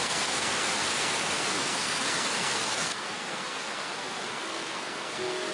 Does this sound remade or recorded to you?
remade